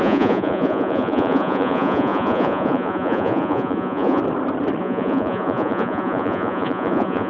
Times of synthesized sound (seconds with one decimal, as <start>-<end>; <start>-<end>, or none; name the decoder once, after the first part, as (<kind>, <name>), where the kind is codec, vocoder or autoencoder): 0.0-4.2 (vocoder, Vocos); 4.8-7.3